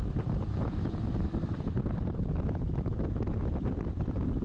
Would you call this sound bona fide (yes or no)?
no